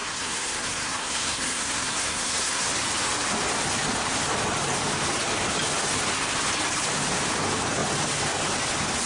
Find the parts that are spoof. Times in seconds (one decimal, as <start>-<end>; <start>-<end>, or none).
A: 0.0-2.7